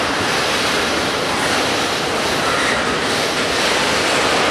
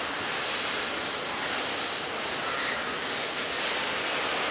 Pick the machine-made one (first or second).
first